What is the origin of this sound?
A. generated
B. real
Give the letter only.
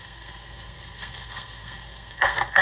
A